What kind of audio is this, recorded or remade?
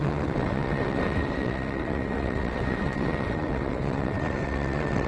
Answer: remade